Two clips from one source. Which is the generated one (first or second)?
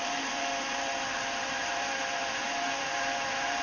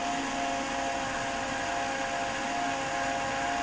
first